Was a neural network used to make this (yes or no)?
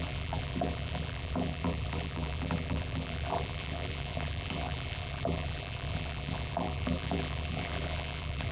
yes